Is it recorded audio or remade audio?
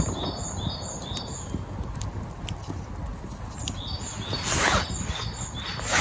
recorded